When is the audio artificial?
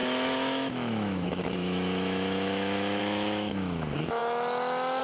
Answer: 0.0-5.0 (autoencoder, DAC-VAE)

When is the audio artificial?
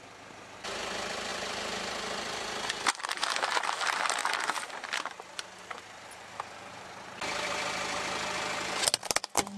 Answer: none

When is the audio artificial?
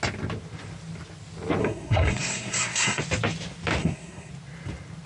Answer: 1.6-3.0 (codec, SNAC); 3.8-4.3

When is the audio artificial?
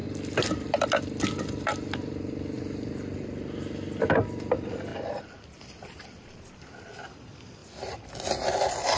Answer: none